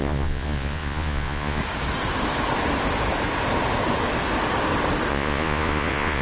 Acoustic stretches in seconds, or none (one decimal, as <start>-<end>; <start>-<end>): 1.6-5.1